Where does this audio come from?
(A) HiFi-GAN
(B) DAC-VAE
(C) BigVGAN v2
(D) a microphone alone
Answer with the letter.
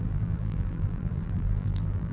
C